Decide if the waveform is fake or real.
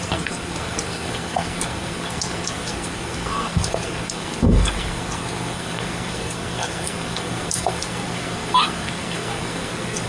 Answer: fake